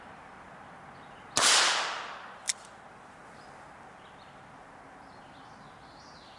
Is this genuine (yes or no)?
yes